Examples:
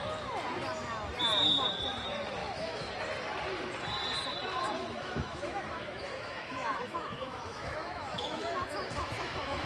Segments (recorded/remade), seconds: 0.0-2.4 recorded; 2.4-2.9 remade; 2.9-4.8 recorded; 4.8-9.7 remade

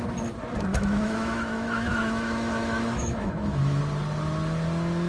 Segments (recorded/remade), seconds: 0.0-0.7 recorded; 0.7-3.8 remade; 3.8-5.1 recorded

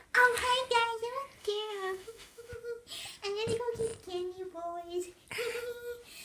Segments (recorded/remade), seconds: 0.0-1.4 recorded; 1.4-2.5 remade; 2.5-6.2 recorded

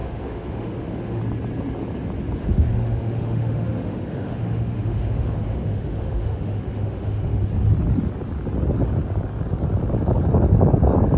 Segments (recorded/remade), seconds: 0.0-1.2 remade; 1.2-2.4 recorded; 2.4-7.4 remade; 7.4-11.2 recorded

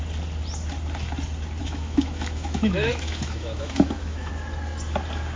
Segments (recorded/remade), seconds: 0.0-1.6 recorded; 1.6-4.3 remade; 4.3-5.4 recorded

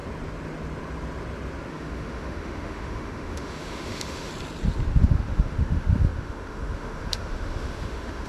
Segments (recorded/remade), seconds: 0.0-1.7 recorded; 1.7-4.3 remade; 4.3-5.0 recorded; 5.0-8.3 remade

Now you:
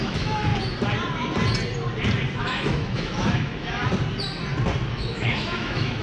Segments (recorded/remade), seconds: 0.0-0.5 remade; 0.5-2.4 recorded; 2.4-3.8 remade; 3.8-4.9 recorded; 4.9-6.0 remade

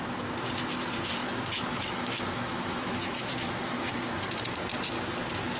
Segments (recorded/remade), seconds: 0.0-1.2 recorded; 1.2-3.9 remade; 3.9-5.6 recorded